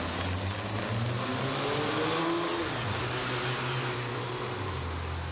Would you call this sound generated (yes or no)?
no